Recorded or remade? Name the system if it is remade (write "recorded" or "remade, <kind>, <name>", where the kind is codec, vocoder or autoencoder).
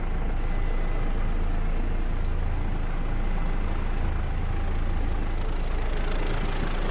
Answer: recorded